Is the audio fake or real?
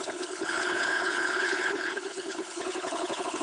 fake